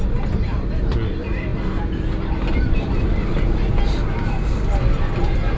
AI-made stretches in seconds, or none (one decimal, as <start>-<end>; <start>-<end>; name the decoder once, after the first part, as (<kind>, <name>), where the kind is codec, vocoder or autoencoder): none